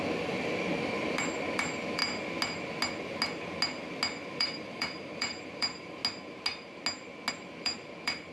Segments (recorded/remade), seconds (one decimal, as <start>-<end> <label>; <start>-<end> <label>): 0.0-2.0 remade; 2.0-4.4 recorded; 4.4-6.0 remade; 6.0-7.3 recorded; 7.3-8.3 remade